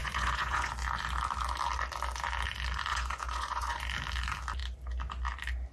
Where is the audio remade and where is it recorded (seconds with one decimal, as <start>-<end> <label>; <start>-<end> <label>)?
0.0-0.7 remade; 0.7-2.9 recorded; 2.9-3.8 remade; 3.8-5.7 recorded